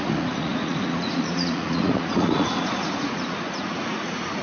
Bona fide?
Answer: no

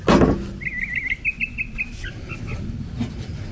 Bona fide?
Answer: yes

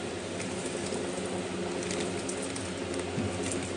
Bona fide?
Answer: yes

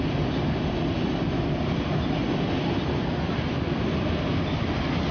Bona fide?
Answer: yes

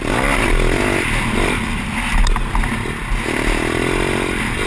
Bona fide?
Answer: yes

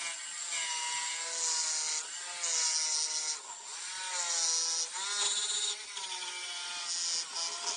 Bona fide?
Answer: yes